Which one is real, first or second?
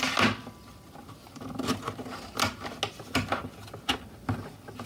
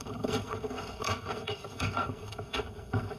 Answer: first